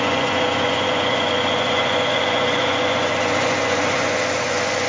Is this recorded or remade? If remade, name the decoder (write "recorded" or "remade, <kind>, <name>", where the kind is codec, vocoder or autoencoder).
remade, vocoder, Vocos